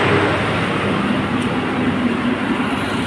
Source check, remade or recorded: recorded